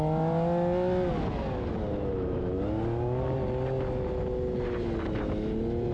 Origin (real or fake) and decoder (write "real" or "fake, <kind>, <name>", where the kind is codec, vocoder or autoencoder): real